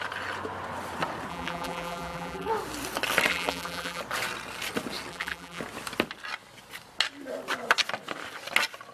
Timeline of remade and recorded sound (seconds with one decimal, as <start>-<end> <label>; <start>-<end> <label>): 0.0-1.3 recorded; 1.3-2.5 remade; 2.5-3.3 recorded; 3.3-4.0 remade; 4.0-5.1 recorded; 5.1-5.6 remade; 5.6-8.9 recorded